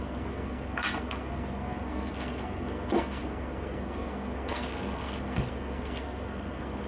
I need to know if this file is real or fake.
fake